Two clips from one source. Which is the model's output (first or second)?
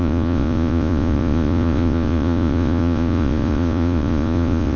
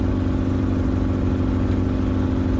first